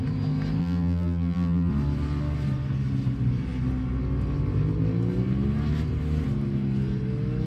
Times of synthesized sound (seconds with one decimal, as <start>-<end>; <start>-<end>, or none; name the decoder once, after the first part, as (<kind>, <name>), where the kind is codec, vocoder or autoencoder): 0.6-1.7 (vocoder, BigVGAN v2)